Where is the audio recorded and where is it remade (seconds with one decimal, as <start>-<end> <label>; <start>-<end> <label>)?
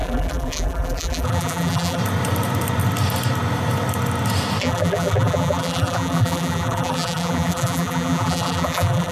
0.0-2.0 remade; 2.0-4.6 recorded; 4.6-9.1 remade